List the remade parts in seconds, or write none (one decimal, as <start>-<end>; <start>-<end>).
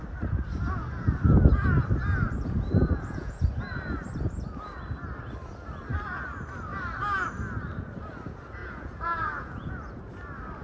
2.8-3.4; 8.6-10.1